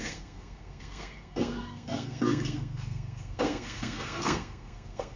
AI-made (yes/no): yes